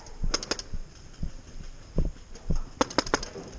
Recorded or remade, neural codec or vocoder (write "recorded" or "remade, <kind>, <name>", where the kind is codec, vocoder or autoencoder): recorded